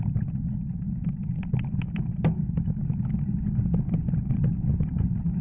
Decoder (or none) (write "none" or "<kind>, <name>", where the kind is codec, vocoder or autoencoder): none